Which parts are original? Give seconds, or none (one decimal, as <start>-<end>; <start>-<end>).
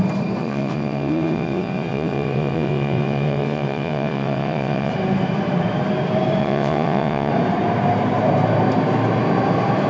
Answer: 0.0-0.4; 4.9-6.4; 7.3-9.9